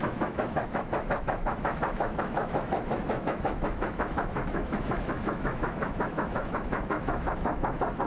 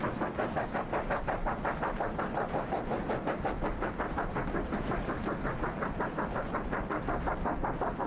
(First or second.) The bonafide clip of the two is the second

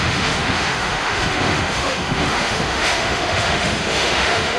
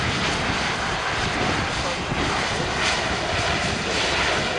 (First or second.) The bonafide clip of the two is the second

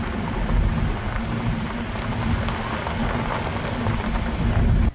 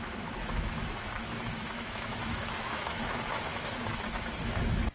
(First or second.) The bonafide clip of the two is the first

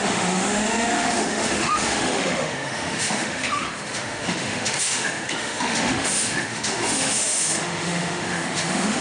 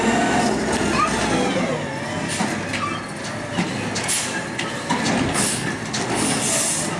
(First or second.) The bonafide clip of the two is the second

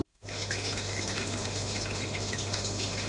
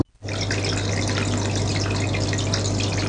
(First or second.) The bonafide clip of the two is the second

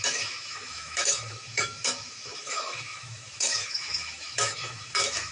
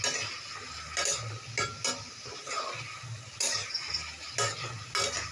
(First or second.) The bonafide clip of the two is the second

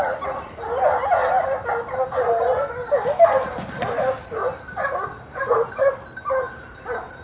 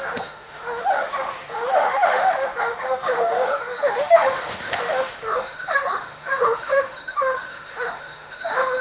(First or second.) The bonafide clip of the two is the first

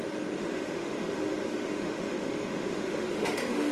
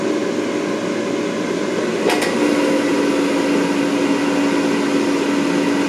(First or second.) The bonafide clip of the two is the second